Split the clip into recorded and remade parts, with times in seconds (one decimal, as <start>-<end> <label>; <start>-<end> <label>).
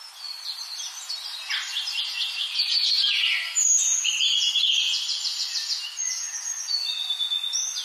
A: 0.0-1.7 recorded; 1.7-3.2 remade; 3.2-7.8 recorded